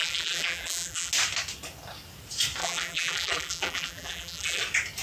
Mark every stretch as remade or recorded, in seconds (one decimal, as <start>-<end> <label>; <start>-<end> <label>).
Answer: 0.0-1.1 remade; 1.1-2.6 recorded; 2.6-4.6 remade; 4.6-5.0 recorded